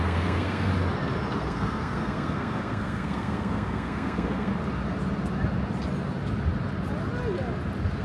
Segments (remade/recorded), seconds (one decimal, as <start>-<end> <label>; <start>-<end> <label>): 0.0-0.7 remade; 0.7-1.4 recorded; 1.4-4.5 remade; 4.5-8.0 recorded

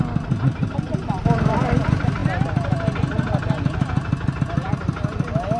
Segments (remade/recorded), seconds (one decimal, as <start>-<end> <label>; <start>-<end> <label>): 0.0-5.6 recorded

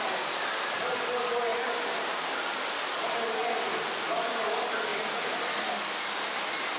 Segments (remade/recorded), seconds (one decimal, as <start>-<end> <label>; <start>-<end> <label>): 0.0-6.8 recorded